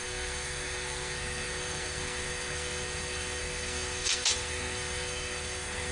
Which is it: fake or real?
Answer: fake